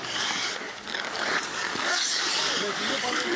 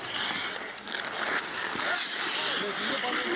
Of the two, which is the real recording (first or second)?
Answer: second